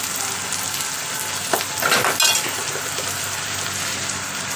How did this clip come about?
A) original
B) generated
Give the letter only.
A